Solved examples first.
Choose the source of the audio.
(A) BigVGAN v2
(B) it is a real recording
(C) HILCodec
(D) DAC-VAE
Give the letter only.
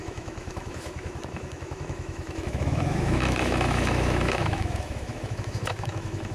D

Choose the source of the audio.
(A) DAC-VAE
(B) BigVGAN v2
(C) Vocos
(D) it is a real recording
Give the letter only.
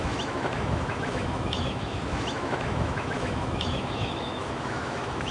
A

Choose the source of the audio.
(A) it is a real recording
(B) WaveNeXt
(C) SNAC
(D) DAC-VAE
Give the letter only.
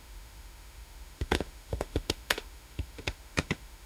D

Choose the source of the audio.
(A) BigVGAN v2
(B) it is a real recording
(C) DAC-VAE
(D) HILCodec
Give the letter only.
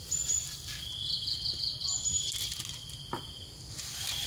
B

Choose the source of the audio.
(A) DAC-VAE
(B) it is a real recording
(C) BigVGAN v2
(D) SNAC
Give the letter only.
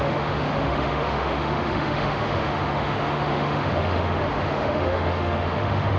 A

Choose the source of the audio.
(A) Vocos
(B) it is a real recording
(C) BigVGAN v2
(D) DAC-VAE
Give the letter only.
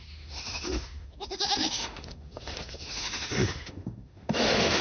D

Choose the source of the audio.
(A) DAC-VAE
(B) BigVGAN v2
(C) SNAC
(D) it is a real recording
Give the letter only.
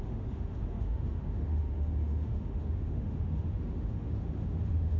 A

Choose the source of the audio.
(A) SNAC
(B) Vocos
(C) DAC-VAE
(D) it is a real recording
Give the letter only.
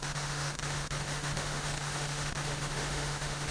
C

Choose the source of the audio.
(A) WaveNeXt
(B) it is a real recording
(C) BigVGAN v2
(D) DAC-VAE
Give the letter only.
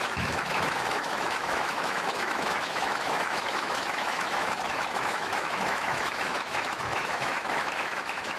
D